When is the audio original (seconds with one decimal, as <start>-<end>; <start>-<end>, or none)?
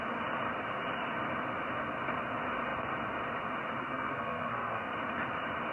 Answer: 0.0-3.8; 4.9-5.7